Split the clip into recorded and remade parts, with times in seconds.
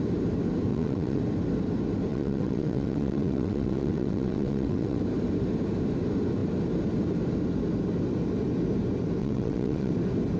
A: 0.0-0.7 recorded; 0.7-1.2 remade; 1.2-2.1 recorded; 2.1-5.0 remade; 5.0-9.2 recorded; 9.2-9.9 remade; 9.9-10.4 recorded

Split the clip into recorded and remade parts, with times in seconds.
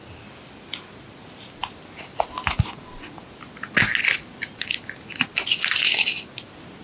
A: 0.0-6.8 recorded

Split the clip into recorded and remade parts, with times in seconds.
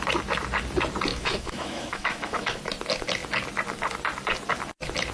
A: 0.0-1.1 recorded; 1.1-2.6 remade; 2.6-5.1 recorded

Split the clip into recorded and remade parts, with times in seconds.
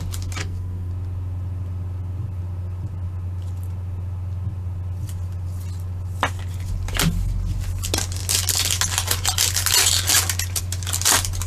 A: 0.0-0.4 recorded; 0.4-0.9 remade; 0.9-11.5 recorded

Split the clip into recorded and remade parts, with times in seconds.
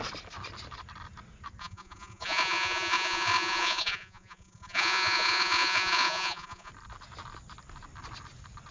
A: 0.0-1.6 recorded; 1.6-6.7 remade; 6.7-8.7 recorded